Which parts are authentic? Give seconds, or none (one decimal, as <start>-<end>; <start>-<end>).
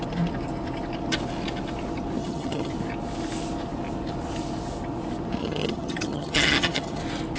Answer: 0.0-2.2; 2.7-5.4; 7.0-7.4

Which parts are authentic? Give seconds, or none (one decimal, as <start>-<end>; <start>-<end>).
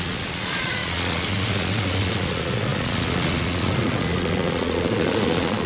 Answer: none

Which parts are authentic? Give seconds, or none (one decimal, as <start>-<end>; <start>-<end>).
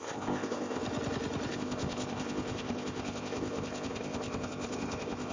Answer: 0.8-1.5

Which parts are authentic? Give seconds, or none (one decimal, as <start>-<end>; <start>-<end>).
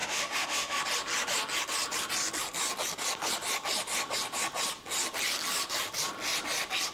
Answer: 0.8-6.9